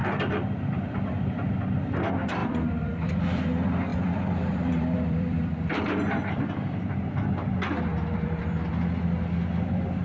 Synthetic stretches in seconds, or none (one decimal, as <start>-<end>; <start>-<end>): 0.0-1.5; 2.4-3.1; 3.9-7.0; 7.9-8.7